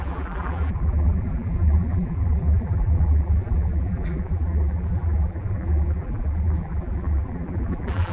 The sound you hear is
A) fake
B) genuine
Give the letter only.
A